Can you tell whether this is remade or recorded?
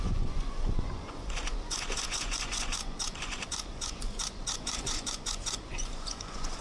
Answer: remade